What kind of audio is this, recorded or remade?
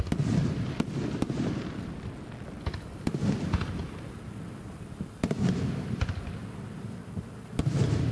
recorded